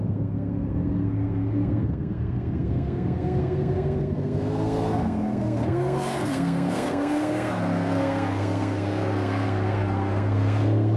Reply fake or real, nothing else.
fake